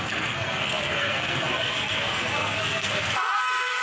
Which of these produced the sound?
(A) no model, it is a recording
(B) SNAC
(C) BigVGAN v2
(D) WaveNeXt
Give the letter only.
B